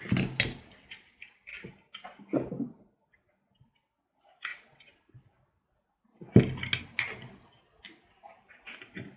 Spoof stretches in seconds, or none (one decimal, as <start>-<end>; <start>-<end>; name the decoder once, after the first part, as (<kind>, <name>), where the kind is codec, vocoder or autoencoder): none